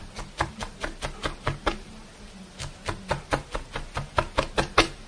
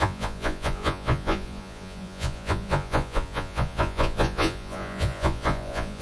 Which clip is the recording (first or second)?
first